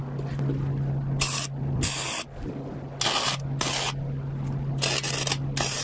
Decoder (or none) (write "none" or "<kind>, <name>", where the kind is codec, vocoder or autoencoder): none